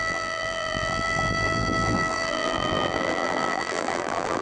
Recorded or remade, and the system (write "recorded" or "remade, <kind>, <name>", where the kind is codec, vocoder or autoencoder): remade, vocoder, BigVGAN v2